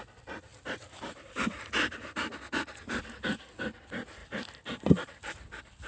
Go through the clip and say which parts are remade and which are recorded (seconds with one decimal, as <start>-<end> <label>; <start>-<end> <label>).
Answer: 0.0-5.9 recorded